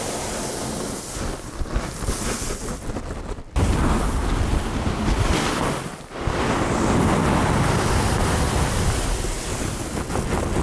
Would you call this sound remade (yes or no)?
no